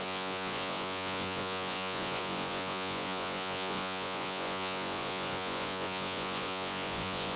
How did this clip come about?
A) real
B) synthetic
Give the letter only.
B